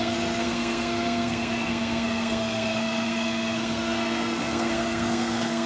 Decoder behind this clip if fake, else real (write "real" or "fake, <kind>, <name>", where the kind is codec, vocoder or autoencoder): fake, codec, SNAC